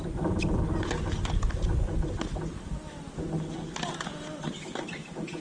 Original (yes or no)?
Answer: yes